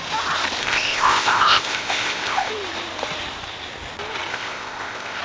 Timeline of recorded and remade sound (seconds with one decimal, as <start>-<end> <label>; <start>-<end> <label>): 0.0-0.6 recorded; 0.6-2.5 remade; 2.5-4.3 recorded; 4.3-5.2 remade